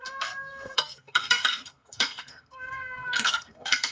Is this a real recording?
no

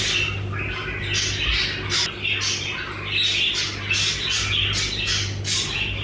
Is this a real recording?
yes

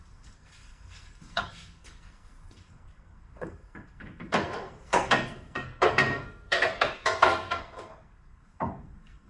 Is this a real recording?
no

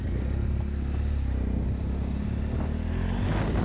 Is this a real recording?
yes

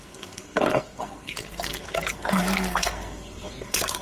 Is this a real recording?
no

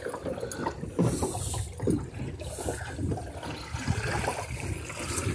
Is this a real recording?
yes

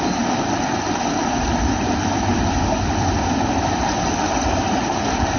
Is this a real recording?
yes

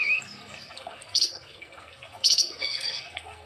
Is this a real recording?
no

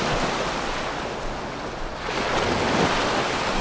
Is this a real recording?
yes